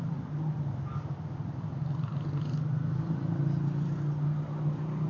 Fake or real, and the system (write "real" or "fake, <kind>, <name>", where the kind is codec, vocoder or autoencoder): real